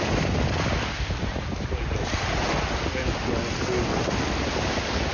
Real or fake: real